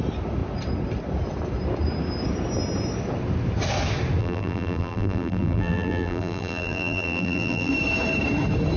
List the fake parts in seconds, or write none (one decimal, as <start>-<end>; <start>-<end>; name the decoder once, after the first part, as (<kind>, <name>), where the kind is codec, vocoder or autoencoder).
4.2-7.7 (vocoder, BigVGAN v2)